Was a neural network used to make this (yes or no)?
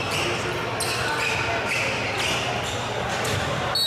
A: no